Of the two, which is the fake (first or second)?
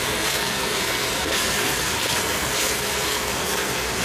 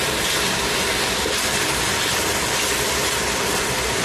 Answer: first